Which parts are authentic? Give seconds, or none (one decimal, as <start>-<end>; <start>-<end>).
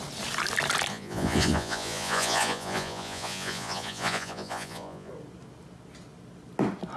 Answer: 0.0-0.9; 5.1-7.0